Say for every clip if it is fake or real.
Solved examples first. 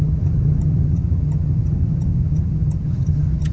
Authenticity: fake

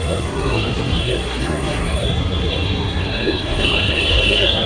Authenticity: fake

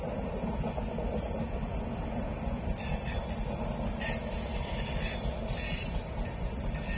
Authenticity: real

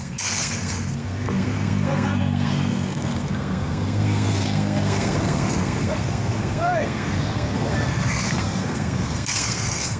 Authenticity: fake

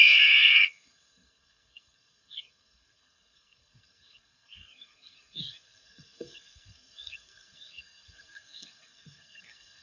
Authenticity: fake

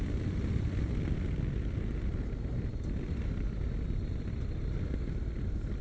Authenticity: real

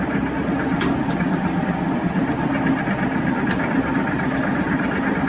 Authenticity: real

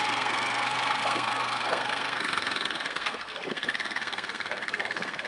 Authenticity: fake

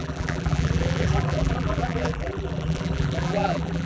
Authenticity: fake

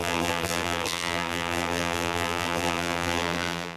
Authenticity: fake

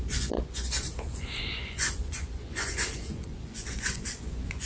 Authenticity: fake